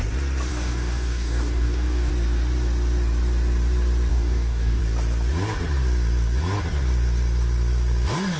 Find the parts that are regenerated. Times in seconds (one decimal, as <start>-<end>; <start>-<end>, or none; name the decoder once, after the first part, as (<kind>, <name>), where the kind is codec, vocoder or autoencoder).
0.5-2.1 (codec, DAC); 4.1-4.8